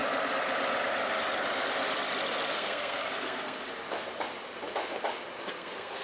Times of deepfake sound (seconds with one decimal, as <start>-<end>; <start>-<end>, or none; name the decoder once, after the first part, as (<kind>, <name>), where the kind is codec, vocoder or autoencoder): 2.5-3.6 (codec, SNAC); 5.5-6.0